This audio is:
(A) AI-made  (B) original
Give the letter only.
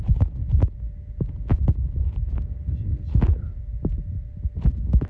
B